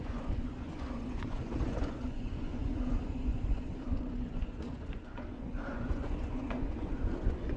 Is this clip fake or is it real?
fake